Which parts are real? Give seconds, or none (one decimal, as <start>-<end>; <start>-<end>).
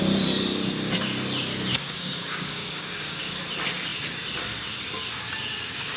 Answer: 0.0-1.7; 3.2-6.0